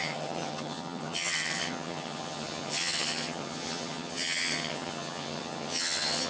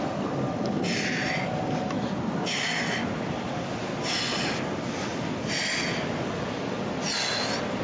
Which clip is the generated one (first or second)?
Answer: first